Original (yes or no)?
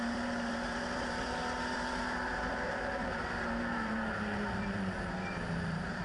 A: no